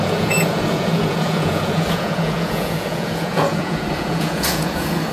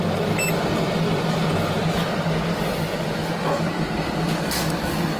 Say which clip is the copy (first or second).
first